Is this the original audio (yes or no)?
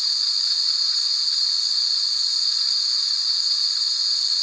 yes